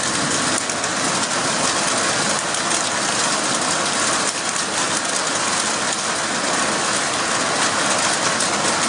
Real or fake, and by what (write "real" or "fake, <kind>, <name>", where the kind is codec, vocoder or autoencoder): real